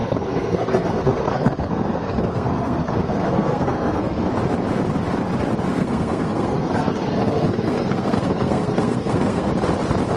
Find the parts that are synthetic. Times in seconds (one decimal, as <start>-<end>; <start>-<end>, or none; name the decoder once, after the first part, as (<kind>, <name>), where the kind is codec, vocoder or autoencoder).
0.0-4.3 (codec, SNAC); 5.7-9.5